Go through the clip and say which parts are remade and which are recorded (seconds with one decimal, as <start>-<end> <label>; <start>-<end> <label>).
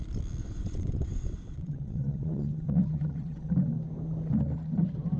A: 0.0-0.4 recorded; 0.4-3.5 remade; 3.5-5.2 recorded